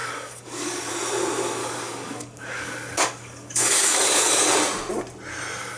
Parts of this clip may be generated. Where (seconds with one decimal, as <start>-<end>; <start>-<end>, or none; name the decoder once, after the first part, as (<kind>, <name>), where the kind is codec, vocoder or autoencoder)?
0.0-0.9 (codec, DAC); 1.6-4.5

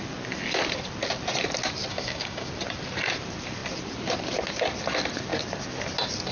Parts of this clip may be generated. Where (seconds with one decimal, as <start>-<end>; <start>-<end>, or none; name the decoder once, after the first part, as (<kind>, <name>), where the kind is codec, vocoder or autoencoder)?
1.9-2.5 (codec, DAC)

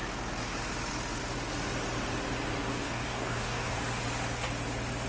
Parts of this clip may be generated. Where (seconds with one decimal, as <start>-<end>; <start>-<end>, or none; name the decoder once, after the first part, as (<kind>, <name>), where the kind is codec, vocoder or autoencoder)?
2.7-3.8 (codec, DAC)